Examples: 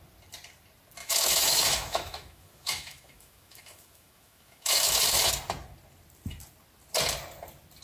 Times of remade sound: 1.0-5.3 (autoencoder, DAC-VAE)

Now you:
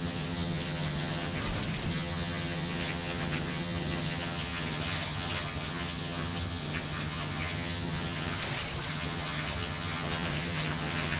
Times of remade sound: 0.0-1.4 (vocoder, HiFi-GAN); 1.9-8.4; 8.9-11.2

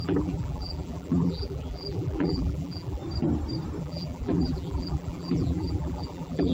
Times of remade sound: 0.0-3.0 (vocoder, BigVGAN v2); 3.8-6.5

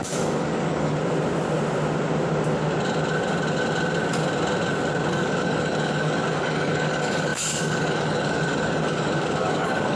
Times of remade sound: 0.0-0.9 (codec, DAC); 5.1-10.0

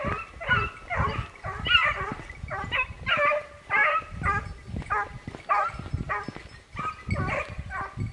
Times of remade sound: none

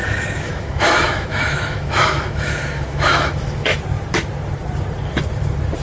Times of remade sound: 0.0-3.7 (autoencoder, DAC-VAE)

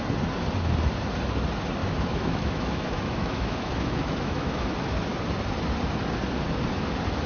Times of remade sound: 1.8-4.6 (autoencoder, DAC-VAE)

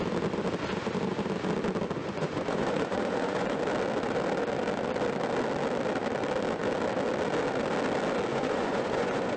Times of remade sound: 2.0-3.6 (vocoder, Vocos); 8.3-9.4